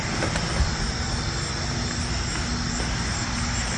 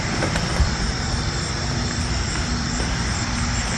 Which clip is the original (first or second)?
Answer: first